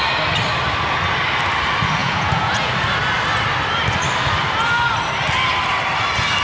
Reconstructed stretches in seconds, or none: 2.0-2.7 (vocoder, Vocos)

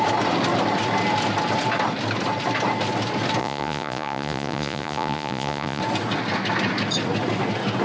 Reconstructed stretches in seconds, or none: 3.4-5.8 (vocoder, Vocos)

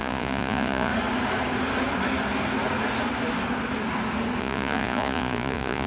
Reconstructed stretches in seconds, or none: 0.0-0.9 (vocoder, Vocos); 4.4-5.9

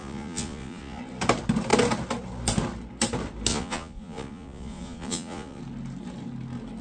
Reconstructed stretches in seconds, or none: 0.0-1.0 (vocoder, Vocos); 3.5-5.6

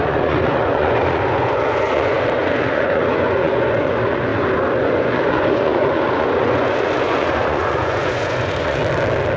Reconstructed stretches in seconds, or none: 0.0-4.3 (vocoder, Vocos); 4.8-8.8

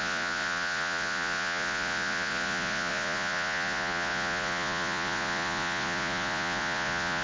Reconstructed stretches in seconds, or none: 0.0-7.2 (vocoder, Vocos)